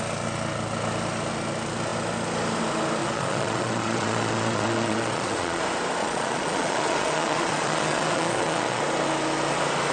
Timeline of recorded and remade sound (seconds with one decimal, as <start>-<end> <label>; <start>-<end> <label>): 0.0-3.0 recorded; 3.0-5.6 remade; 5.6-6.0 recorded; 6.0-8.8 remade; 8.8-9.9 recorded